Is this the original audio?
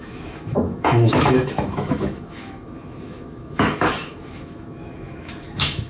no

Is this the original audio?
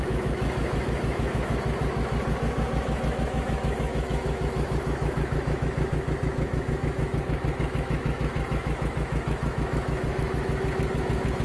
no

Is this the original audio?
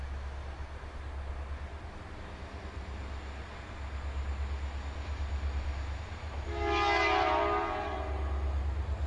yes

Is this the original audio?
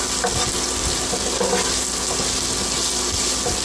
yes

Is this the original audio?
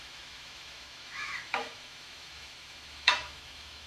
no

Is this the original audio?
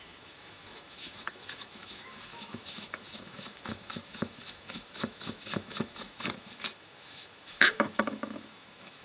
no